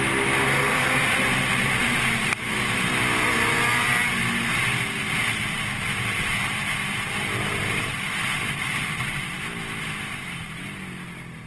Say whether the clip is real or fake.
real